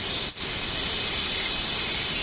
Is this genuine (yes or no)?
yes